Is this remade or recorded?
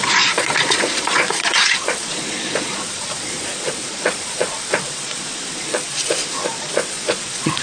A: remade